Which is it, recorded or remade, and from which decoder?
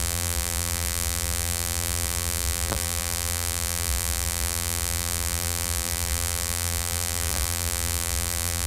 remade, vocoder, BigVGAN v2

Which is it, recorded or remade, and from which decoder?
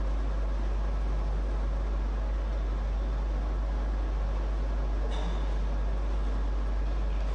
recorded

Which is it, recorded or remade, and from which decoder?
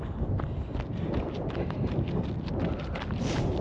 recorded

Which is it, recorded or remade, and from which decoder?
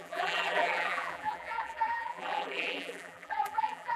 remade, vocoder, BigVGAN v2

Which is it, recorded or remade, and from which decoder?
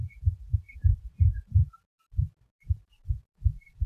remade, vocoder, BigVGAN v2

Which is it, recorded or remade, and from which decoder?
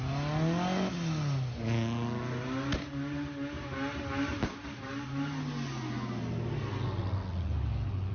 recorded